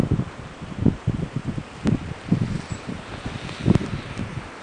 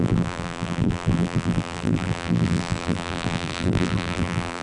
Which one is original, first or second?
first